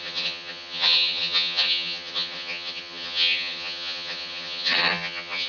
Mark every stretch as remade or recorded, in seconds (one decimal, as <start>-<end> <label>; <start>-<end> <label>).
0.0-5.5 remade